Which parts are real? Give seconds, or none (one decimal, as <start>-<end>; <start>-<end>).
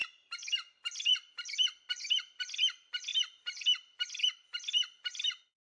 0.7-1.1; 2.4-3.1; 4.3-5.6